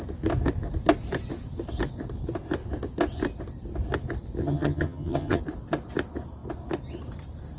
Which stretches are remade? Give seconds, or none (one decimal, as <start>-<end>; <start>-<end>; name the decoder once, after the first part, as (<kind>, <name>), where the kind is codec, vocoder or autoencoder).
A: 4.4-5.4 (vocoder, HiFi-GAN)